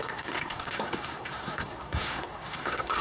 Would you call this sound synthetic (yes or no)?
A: yes